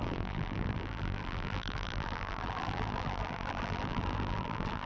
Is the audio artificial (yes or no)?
yes